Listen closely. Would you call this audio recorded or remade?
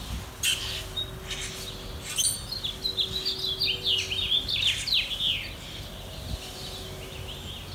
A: recorded